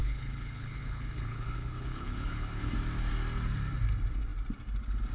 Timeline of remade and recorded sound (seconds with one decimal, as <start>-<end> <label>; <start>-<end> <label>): 0.0-2.7 remade; 2.7-5.1 recorded